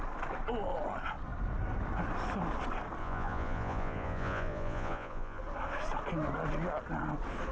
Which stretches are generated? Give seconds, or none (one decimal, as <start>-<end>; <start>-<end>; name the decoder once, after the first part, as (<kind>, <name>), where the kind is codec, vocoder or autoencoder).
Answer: 3.0-5.4 (vocoder, Vocos)